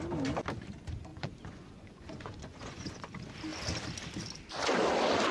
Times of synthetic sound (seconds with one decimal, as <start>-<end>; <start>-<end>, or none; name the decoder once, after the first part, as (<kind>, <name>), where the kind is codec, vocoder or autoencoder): 1.1-3.0 (vocoder, Vocos)